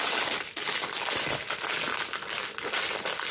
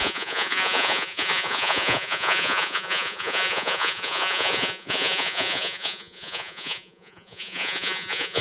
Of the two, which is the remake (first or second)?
second